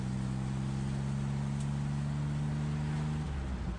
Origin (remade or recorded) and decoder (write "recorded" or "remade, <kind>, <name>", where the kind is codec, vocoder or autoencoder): recorded